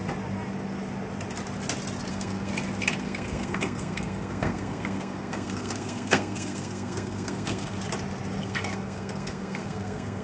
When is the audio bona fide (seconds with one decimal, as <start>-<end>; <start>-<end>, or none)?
0.0-2.1; 2.5-3.0; 7.8-8.4